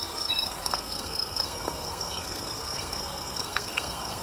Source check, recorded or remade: remade